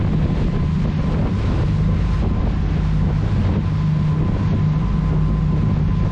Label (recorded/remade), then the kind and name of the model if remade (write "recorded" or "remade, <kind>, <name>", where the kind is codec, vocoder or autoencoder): recorded